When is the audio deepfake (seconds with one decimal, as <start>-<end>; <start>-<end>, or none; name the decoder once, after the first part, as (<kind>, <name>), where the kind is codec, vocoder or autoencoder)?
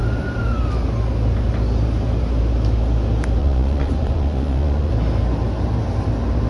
3.4-4.9 (vocoder, Vocos)